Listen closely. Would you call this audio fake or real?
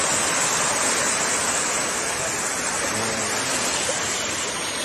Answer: real